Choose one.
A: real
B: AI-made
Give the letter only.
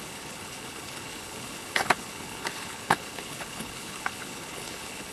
B